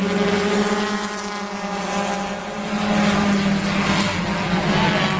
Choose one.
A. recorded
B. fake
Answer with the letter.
A